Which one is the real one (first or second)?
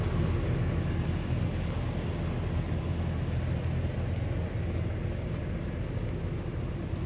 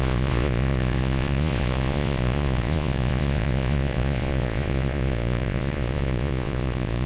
first